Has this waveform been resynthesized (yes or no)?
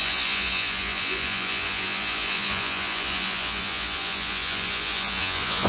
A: yes